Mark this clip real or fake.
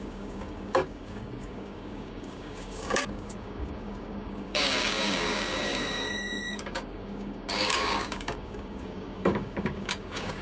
fake